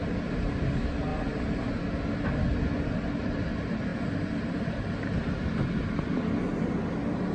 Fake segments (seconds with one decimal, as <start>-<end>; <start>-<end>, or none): 1.1-1.7; 3.9-4.9